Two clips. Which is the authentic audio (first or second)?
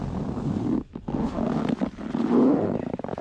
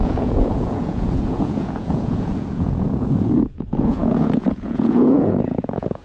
first